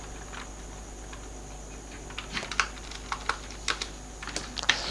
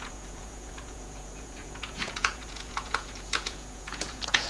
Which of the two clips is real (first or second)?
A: first